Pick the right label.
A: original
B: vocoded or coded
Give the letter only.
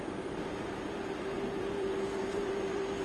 B